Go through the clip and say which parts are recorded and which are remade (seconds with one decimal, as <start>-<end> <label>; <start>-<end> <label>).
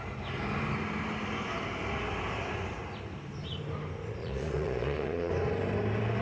0.0-4.2 recorded; 4.2-5.3 remade; 5.3-6.2 recorded